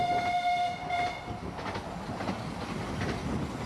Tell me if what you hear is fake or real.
real